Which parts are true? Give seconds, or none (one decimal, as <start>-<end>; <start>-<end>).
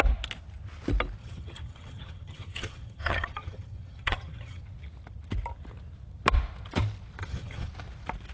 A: 0.0-1.2; 4.6-7.2; 7.7-8.3